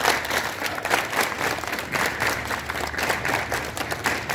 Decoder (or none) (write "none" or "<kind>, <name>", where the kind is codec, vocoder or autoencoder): vocoder, BigVGAN v2